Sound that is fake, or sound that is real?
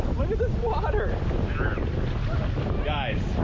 real